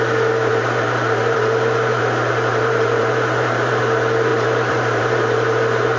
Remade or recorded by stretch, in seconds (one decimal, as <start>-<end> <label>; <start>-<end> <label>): 0.0-0.5 recorded; 0.5-2.0 remade; 2.0-2.5 recorded; 2.5-3.8 remade; 3.8-4.3 recorded; 4.3-6.0 remade